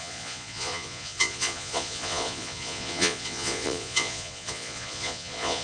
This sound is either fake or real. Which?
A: fake